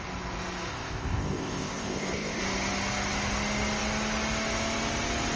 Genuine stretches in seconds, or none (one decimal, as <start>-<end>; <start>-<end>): 0.0-0.7; 2.4-5.4